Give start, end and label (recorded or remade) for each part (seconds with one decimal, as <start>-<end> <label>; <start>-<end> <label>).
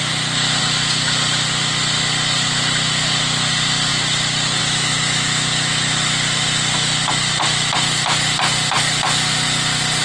0.0-10.0 recorded